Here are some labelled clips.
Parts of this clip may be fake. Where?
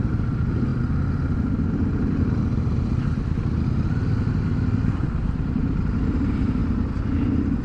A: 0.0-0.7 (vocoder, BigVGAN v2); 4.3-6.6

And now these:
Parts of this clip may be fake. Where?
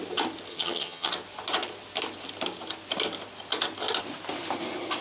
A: 0.5-1.1 (vocoder, HiFi-GAN)